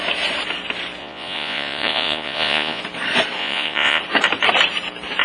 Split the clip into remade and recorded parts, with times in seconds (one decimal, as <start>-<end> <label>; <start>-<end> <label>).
0.0-1.0 recorded; 1.0-2.8 remade; 2.8-3.4 recorded; 3.4-4.0 remade; 4.0-5.2 recorded